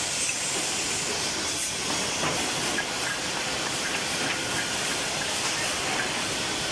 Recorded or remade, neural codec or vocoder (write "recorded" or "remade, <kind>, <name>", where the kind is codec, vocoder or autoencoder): recorded